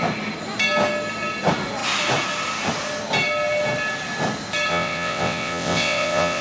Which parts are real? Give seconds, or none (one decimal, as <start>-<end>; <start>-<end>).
0.0-4.7